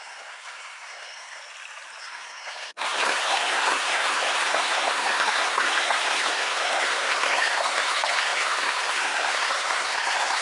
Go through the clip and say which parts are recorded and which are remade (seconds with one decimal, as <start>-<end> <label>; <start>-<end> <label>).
0.0-1.4 remade; 1.4-2.0 recorded; 2.0-10.4 remade